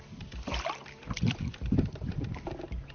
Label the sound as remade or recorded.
recorded